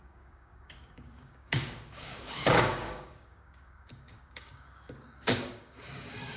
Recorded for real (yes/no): no